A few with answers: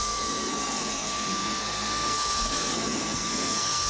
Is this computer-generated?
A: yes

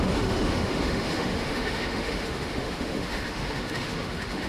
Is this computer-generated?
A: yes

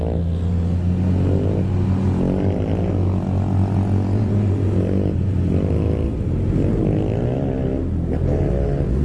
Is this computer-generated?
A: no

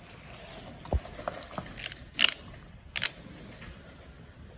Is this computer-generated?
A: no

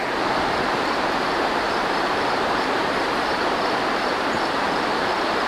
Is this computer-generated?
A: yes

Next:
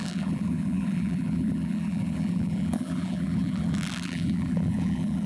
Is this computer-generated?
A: yes